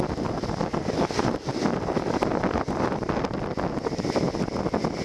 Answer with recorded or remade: recorded